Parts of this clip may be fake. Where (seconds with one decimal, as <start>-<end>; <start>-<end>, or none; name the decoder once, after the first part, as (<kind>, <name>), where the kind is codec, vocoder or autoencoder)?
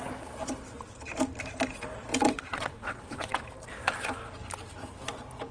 2.1-3.4 (vocoder, WaveNeXt)